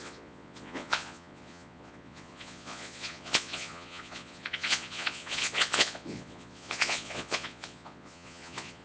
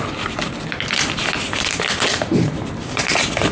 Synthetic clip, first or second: first